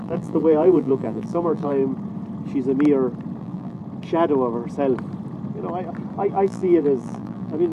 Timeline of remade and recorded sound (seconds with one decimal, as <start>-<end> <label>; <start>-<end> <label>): 0.0-1.8 remade; 1.8-3.4 recorded; 3.4-3.8 remade; 3.8-6.3 recorded; 6.3-7.7 remade